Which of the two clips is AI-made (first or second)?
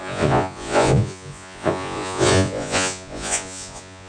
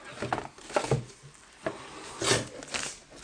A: first